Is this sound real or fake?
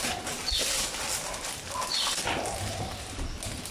real